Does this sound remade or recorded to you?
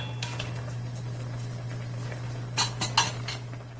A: recorded